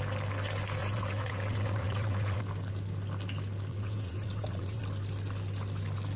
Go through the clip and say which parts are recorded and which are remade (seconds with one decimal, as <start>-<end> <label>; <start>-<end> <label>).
0.0-0.8 recorded; 0.8-2.4 remade; 2.4-3.7 recorded; 3.7-4.8 remade; 4.8-6.2 recorded